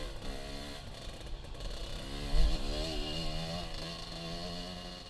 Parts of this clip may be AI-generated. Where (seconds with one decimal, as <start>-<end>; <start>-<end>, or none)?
none